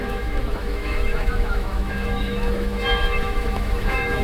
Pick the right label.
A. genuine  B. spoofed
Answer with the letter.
B